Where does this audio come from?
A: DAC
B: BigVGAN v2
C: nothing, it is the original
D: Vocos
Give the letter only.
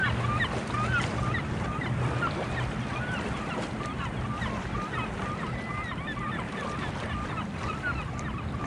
C